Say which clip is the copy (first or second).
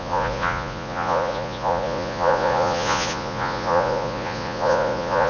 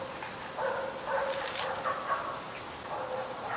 first